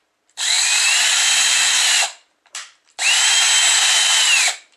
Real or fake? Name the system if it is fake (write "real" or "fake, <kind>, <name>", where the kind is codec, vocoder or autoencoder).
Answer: fake, vocoder, BigVGAN v2